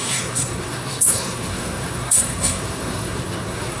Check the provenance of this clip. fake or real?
fake